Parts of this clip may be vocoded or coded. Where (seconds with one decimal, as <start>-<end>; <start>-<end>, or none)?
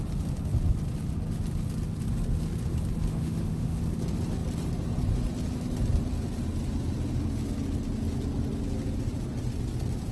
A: 3.1-3.8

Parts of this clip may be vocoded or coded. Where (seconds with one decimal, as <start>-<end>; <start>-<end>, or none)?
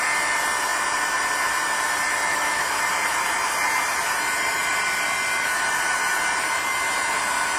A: 2.3-2.8